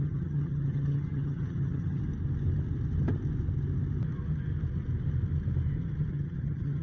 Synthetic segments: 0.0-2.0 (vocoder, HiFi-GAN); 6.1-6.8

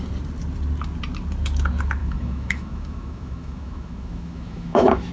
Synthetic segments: 2.0-5.1 (autoencoder, DAC-VAE)

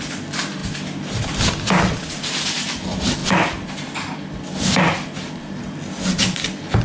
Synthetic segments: none

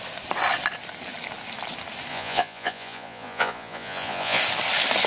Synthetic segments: 2.1-4.4 (vocoder, Vocos)